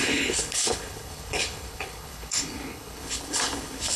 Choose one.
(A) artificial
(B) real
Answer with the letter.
A